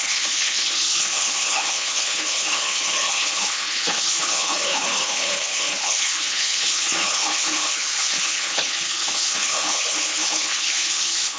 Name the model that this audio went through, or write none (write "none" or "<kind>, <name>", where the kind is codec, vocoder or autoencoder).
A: codec, HILCodec